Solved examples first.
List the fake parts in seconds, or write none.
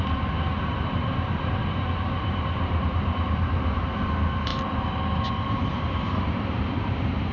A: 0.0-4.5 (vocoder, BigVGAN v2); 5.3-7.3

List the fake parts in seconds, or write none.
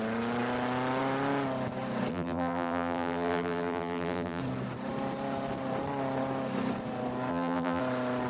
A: 2.1-4.4 (vocoder, BigVGAN v2); 7.3-7.8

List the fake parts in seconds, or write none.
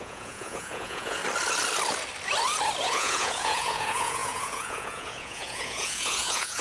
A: 0.0-1.2 (vocoder, Vocos); 2.8-6.6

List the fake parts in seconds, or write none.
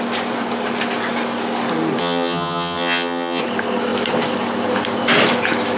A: 2.0-3.4 (vocoder, HiFi-GAN)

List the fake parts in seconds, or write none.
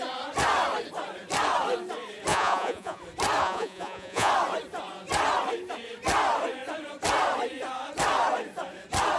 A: 2.3-3.0 (vocoder, Vocos); 3.4-4.3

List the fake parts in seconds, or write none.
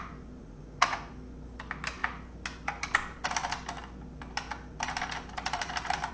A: 0.4-1.1 (vocoder, Vocos)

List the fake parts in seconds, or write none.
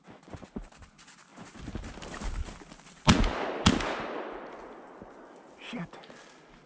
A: none